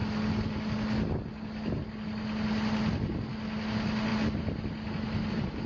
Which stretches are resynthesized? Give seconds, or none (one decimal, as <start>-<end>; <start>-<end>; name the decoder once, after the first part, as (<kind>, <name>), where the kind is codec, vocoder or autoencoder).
none